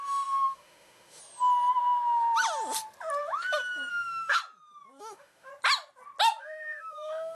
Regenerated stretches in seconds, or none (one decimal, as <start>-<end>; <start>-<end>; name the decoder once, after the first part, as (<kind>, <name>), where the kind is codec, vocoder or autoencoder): 0.0-1.2 (autoencoder, DAC-VAE); 3.9-4.4; 5.0-5.5; 6.4-7.3